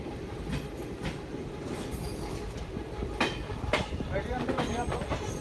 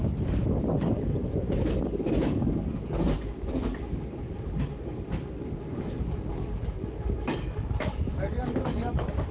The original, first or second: first